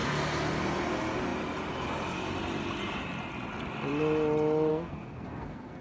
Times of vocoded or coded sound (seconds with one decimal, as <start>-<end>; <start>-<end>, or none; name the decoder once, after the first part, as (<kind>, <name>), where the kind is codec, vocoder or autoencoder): 4.7-5.8 (codec, SNAC)